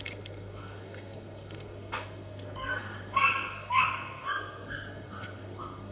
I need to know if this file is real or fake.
fake